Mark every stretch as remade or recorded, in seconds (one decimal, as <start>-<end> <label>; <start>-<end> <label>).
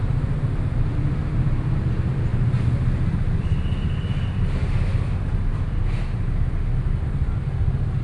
0.0-8.0 recorded